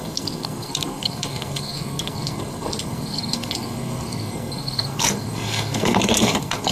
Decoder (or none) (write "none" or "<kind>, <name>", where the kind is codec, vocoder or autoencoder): codec, SNAC